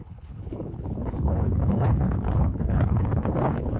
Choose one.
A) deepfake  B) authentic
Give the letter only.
A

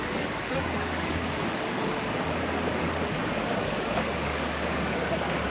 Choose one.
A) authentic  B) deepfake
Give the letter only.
B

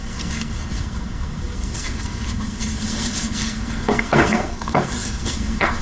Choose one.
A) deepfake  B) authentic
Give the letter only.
A